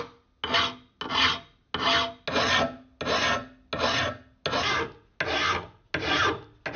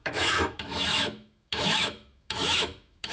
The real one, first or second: first